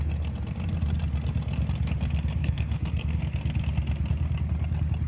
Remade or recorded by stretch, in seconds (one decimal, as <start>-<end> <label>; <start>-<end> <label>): 0.0-2.4 recorded; 2.4-3.2 remade; 3.2-5.1 recorded